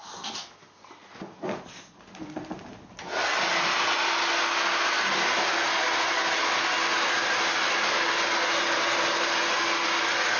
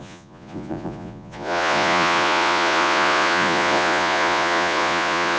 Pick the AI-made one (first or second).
second